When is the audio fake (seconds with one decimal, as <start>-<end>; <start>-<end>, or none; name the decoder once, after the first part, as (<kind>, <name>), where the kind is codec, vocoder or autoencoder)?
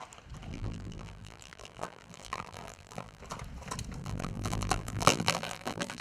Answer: 0.5-3.2 (vocoder, BigVGAN v2); 4.0-6.0